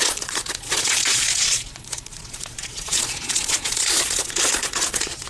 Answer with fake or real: fake